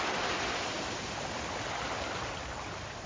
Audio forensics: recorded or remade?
recorded